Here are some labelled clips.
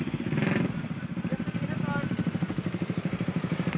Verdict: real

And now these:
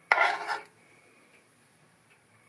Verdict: real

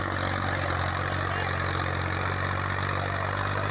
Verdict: real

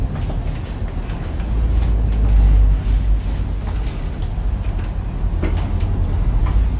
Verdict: real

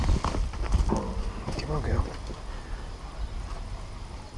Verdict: real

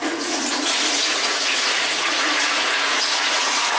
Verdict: fake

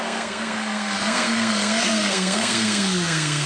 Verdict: fake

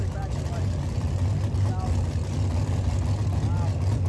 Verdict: real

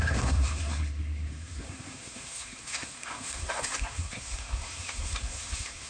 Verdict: fake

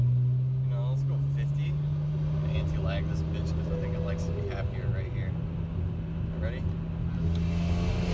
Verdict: real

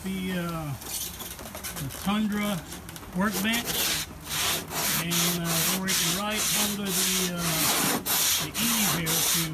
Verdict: real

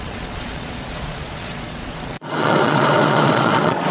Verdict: fake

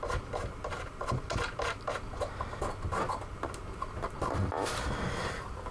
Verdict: real